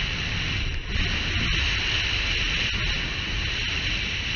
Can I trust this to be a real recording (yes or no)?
yes